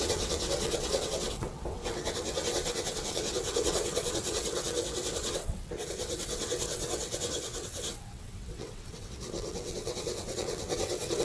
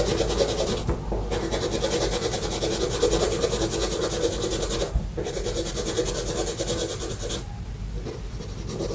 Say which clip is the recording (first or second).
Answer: second